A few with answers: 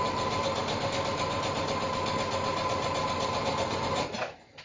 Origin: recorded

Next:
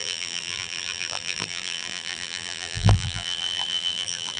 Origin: remade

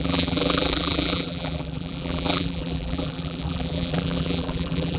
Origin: remade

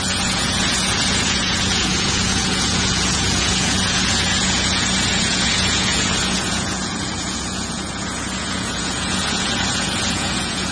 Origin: remade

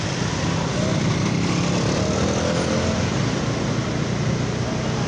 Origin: recorded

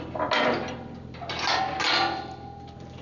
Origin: recorded